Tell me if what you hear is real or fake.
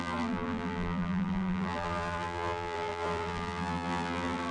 fake